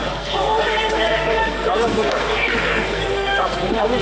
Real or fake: fake